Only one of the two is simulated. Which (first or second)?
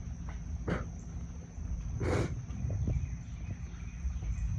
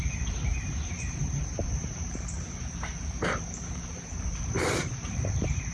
second